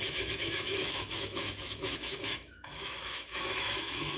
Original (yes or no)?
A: no